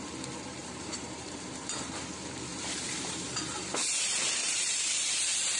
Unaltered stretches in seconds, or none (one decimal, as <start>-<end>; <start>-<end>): 0.0-0.6; 2.0-2.5; 3.9-4.4